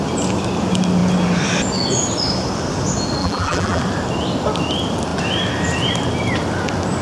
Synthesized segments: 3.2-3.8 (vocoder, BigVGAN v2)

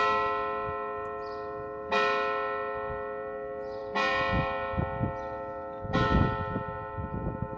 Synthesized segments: none